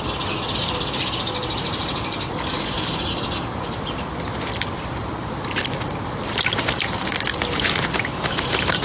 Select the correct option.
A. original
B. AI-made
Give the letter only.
A